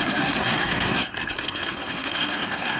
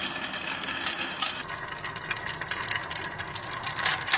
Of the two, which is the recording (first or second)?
second